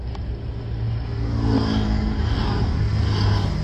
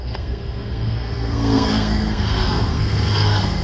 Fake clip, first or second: second